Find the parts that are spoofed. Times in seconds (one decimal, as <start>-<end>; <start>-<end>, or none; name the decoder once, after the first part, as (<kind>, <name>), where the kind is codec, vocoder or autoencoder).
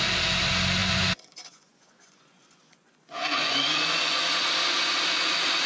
0.8-4.2 (vocoder, Vocos)